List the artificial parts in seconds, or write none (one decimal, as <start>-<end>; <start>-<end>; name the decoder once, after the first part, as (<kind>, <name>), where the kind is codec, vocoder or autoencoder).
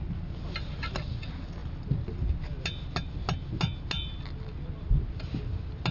none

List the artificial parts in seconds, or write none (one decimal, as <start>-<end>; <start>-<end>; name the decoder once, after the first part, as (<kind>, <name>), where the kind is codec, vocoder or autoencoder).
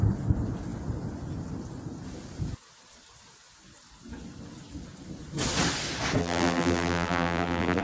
6.2-7.8 (vocoder, BigVGAN v2)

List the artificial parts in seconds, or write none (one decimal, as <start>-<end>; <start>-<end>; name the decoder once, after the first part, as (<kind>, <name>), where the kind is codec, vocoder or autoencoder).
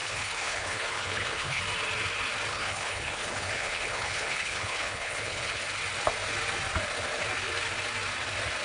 0.0-1.6 (codec, HILCodec); 2.5-5.6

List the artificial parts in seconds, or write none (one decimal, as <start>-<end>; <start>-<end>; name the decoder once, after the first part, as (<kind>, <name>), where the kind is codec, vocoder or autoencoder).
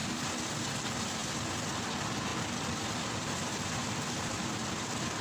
2.3-5.2 (vocoder, BigVGAN v2)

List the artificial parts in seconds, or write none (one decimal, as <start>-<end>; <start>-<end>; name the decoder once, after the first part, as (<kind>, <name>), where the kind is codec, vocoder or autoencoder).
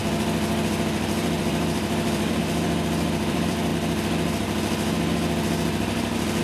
0.0-3.7 (vocoder, BigVGAN v2)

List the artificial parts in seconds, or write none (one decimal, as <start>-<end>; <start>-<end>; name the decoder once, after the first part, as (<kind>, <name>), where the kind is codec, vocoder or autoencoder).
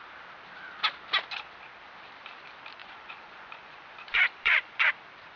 2.8-4.9 (vocoder, Vocos)